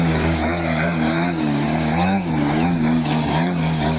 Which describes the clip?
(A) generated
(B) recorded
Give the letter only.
A